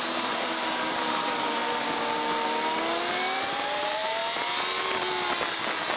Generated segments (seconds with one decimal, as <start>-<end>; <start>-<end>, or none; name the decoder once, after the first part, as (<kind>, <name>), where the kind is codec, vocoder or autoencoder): 0.0-1.6 (vocoder, BigVGAN v2); 3.4-4.2